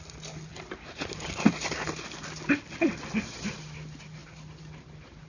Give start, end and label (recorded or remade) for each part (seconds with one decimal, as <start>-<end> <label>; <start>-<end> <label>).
0.0-5.3 recorded